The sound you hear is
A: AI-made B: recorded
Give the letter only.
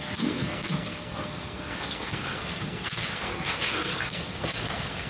A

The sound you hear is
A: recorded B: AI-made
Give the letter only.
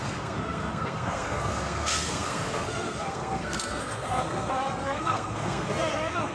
B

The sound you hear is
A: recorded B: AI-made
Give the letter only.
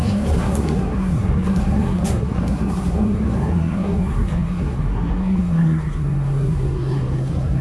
B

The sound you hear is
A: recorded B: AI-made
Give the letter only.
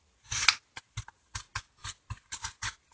A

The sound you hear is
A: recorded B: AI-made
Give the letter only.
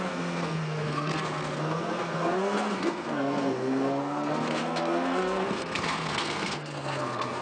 B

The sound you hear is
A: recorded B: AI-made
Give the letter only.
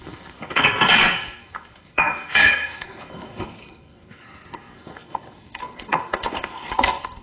B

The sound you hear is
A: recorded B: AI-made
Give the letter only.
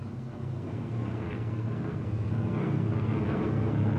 B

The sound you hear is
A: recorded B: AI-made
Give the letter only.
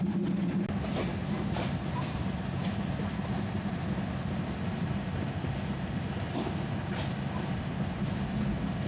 A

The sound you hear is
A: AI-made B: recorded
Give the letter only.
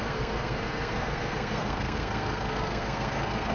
A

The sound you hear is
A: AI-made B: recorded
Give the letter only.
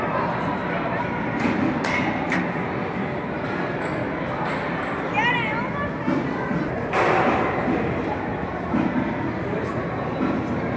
B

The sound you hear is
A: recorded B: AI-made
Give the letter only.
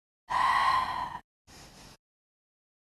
A